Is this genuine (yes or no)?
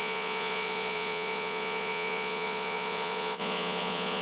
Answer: no